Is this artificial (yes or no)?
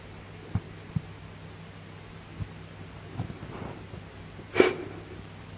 no